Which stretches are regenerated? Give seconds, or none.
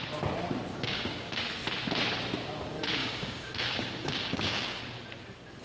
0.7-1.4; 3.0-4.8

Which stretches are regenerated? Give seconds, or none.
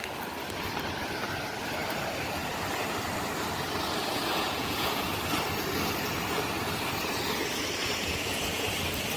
4.0-5.1; 7.8-8.7